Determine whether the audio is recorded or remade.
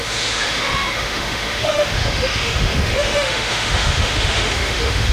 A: remade